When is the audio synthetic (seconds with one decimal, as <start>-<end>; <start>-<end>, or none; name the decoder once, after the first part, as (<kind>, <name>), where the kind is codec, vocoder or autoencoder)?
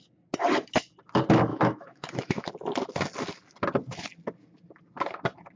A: 1.5-2.5 (autoencoder, DAC-VAE)